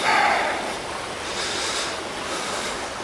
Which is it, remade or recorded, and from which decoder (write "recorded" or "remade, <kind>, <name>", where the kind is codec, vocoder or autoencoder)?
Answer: recorded